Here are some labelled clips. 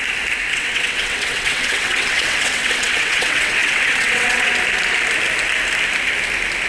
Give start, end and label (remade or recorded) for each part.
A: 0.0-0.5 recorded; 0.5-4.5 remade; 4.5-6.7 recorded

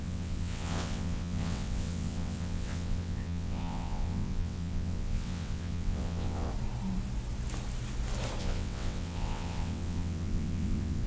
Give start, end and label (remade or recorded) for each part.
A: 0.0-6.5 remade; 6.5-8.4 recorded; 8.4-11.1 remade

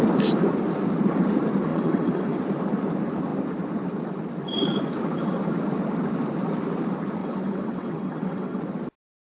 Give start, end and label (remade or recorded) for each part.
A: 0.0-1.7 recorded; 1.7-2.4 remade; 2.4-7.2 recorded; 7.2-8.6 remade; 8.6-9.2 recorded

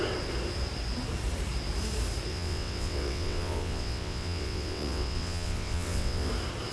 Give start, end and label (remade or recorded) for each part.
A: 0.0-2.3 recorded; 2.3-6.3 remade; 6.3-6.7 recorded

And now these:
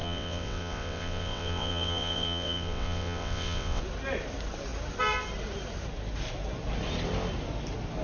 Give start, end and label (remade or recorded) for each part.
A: 0.0-3.8 remade; 3.8-8.0 recorded